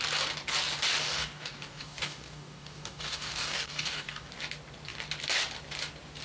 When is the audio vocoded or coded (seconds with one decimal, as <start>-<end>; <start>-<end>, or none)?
1.0-4.3